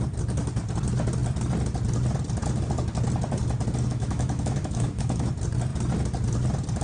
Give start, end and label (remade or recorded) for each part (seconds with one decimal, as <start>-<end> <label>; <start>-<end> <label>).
0.0-3.9 recorded; 3.9-5.3 remade; 5.3-6.8 recorded